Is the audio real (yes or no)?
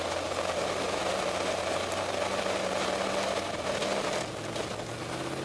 yes